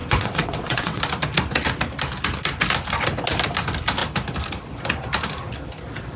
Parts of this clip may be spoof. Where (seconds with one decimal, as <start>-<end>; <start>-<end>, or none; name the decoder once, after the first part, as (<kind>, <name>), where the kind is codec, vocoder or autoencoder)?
0.0-1.0 (vocoder, WaveNeXt)